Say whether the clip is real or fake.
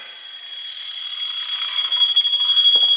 real